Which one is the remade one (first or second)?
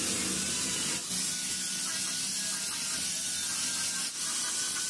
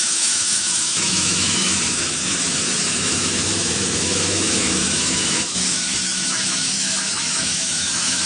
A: second